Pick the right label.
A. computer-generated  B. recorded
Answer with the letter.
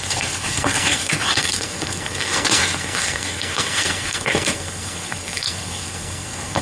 A